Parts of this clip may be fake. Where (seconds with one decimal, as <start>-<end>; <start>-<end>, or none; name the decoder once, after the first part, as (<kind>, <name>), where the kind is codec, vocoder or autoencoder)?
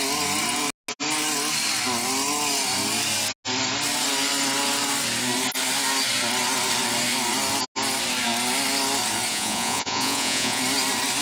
9.3-10.6 (vocoder, Vocos)